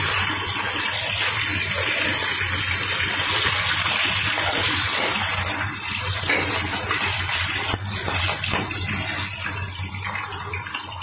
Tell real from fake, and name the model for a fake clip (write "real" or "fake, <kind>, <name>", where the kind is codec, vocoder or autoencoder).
real